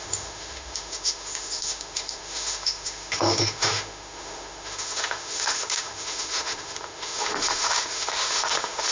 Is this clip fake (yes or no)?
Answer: yes